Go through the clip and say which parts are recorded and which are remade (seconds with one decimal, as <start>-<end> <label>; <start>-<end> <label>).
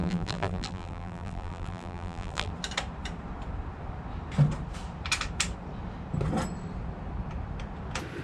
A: 0.0-2.5 remade; 2.5-8.2 recorded